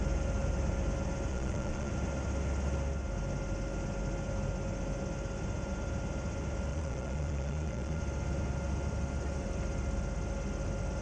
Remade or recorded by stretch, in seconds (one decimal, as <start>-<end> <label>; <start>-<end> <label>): 0.0-1.3 recorded; 1.3-1.9 remade; 1.9-6.7 recorded; 6.7-8.0 remade; 8.0-11.0 recorded